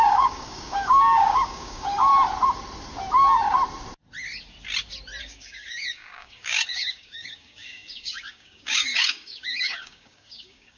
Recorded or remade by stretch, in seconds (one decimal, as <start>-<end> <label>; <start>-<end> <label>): 0.0-2.1 remade; 2.1-5.2 recorded; 5.2-10.8 remade